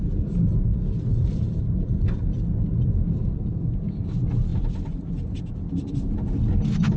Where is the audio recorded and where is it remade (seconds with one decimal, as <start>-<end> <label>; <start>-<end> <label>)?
0.0-1.1 recorded; 1.1-2.0 remade; 2.0-4.5 recorded; 4.5-5.9 remade; 5.9-7.0 recorded